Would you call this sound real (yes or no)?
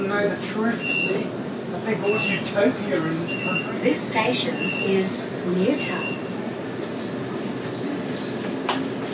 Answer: yes